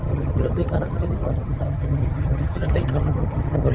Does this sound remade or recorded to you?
remade